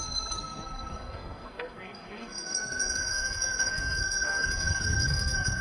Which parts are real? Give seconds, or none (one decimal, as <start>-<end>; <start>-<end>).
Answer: none